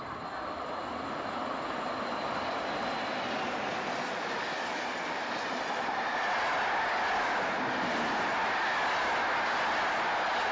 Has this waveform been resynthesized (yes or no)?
no